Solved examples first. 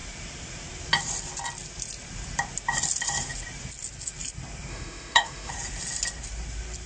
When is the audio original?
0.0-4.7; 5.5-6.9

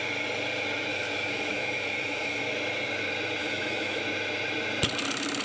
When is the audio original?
0.0-0.9; 2.4-3.4; 4.0-5.4